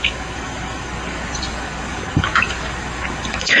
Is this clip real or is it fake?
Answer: fake